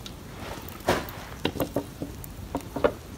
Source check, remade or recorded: recorded